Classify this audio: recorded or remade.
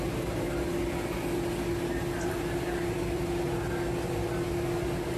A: recorded